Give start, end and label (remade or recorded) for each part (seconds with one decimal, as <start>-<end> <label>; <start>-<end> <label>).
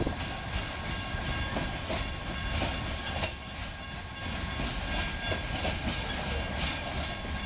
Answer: 0.0-7.5 recorded